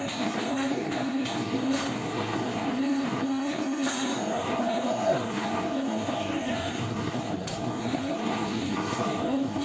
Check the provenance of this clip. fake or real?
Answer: fake